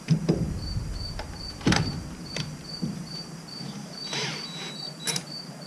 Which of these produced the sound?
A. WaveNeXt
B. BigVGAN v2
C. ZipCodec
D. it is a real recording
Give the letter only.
B